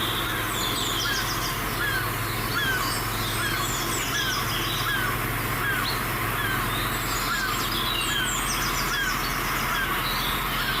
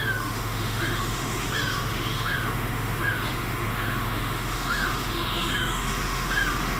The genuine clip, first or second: first